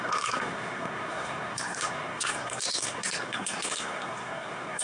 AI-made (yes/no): yes